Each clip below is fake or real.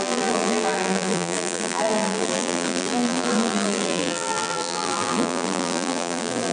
fake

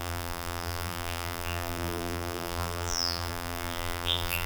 fake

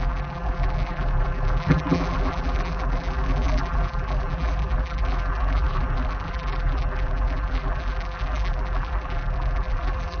fake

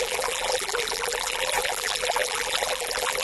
fake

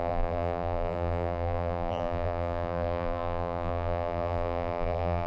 fake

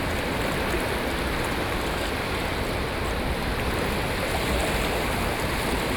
real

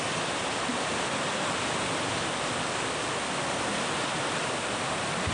real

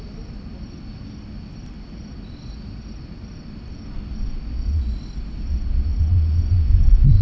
real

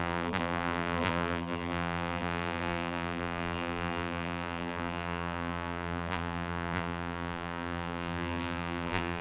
fake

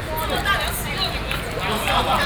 real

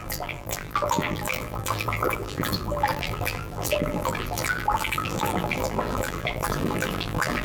fake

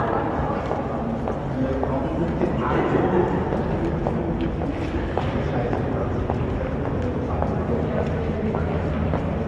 real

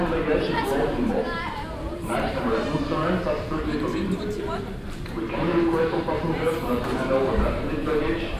fake